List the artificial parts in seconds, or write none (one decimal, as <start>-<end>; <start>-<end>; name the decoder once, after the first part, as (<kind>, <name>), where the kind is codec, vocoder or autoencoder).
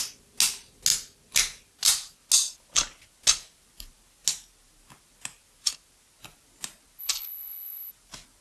7.0-7.9 (codec, HILCodec)